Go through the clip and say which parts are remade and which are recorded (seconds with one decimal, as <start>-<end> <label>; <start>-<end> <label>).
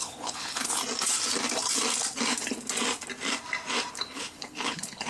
0.0-0.8 remade; 0.8-3.9 recorded; 3.9-5.1 remade